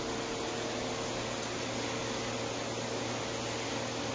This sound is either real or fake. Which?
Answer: real